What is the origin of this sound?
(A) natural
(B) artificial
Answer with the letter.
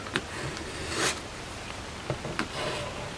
A